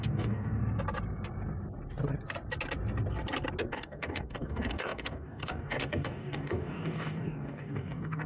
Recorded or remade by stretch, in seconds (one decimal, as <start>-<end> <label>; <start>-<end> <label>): 0.0-0.6 remade; 0.6-3.6 recorded; 3.6-8.3 remade